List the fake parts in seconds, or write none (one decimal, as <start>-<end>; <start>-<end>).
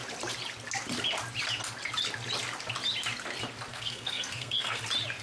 3.7-4.8